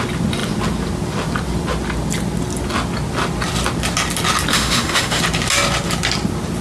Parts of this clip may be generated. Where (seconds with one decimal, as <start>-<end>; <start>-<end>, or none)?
4.5-5.2